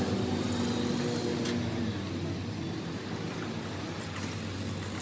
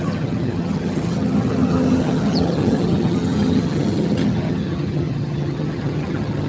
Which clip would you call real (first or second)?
first